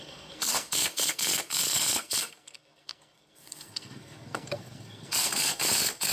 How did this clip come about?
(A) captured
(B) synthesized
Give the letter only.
B